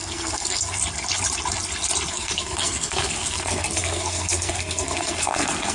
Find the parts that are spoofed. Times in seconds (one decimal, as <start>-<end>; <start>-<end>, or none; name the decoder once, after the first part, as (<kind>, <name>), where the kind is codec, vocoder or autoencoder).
0.0-0.8 (codec, SNAC); 2.1-5.7